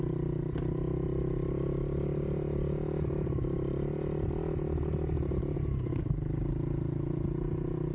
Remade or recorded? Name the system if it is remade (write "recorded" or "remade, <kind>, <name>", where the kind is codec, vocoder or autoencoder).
recorded